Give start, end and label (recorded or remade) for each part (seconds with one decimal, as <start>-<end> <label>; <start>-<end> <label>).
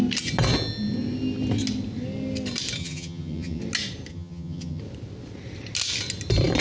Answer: 0.0-2.8 recorded; 2.8-3.6 remade; 3.6-4.1 recorded; 4.1-4.8 remade; 4.8-6.6 recorded